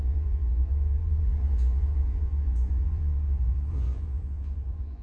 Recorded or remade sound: remade